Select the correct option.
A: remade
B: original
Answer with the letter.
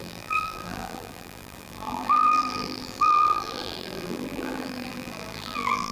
A